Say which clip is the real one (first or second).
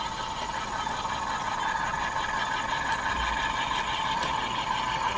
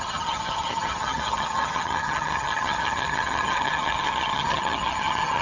first